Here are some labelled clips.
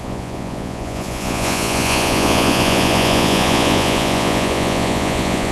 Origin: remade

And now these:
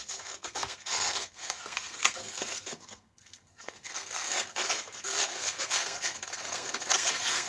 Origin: remade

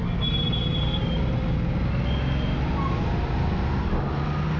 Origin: recorded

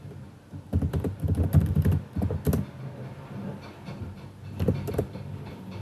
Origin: recorded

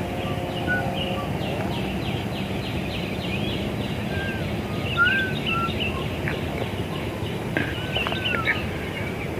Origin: recorded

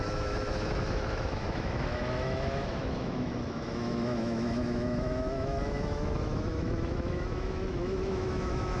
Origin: remade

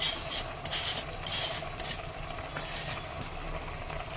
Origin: recorded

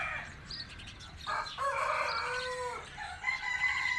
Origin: recorded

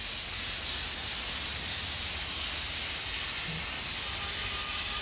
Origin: recorded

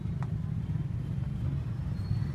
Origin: recorded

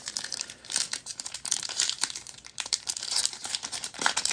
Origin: remade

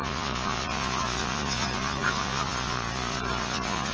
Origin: remade